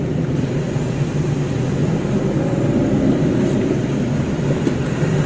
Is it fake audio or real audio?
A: real